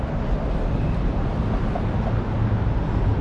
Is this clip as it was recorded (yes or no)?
yes